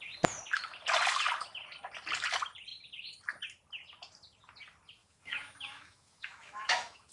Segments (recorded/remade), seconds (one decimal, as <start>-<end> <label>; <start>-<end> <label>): 0.0-5.0 recorded; 5.0-7.1 remade